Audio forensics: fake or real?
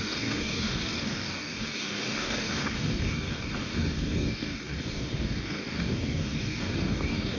fake